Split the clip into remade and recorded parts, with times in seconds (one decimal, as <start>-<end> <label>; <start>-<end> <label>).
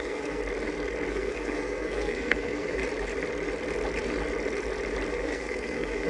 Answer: 0.0-0.4 remade; 0.4-1.1 recorded; 1.1-2.8 remade; 2.8-5.1 recorded; 5.1-6.1 remade